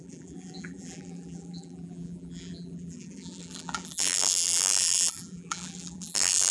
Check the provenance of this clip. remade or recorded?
remade